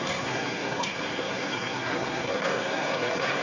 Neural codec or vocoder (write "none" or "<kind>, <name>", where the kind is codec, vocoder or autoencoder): codec, SNAC